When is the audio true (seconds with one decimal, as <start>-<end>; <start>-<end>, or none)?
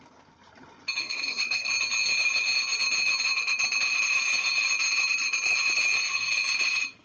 0.0-1.0; 1.7-7.0